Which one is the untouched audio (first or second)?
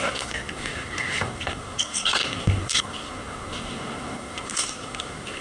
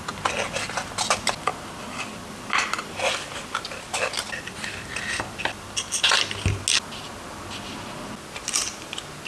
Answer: second